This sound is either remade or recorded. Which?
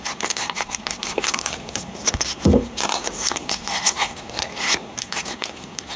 remade